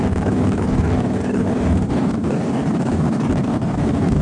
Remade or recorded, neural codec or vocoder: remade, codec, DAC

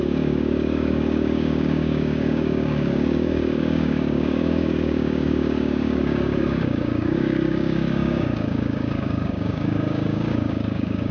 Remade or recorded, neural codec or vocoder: remade, codec, DAC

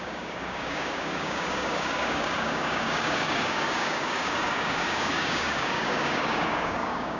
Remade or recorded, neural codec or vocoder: remade, codec, DAC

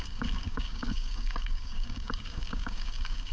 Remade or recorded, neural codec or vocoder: remade, codec, DAC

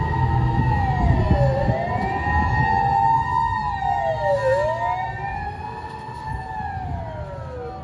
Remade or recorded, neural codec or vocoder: recorded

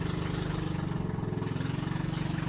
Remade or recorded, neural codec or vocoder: recorded